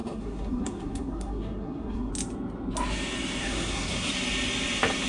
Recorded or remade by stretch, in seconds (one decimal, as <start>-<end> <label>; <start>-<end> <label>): 0.0-2.1 remade; 2.1-3.4 recorded; 3.4-4.1 remade; 4.1-5.1 recorded